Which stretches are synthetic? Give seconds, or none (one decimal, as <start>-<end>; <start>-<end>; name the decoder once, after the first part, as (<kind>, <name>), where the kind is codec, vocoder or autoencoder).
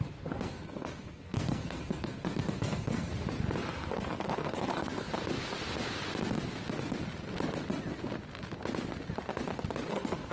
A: 0.0-3.1 (codec, SNAC); 3.7-5.1; 9.9-10.3